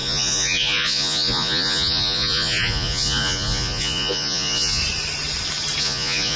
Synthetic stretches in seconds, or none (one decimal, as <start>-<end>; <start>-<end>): 0.0-4.8; 5.8-6.4